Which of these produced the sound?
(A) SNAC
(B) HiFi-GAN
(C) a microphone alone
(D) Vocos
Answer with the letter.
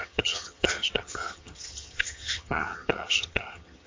B